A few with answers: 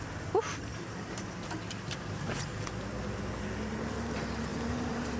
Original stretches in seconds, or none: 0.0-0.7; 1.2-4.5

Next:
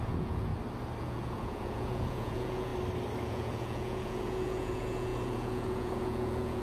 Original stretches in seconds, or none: 0.5-1.0; 2.7-3.3